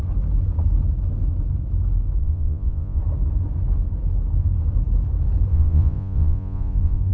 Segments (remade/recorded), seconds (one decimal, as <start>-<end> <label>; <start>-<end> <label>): 0.0-2.2 recorded; 2.2-3.0 remade; 3.0-5.5 recorded; 5.5-7.1 remade